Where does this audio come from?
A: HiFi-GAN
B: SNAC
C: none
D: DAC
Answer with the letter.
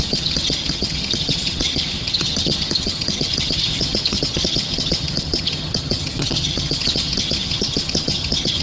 A